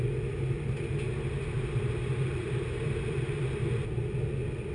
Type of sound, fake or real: real